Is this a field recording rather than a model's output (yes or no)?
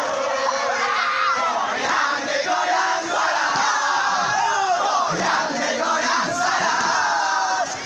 no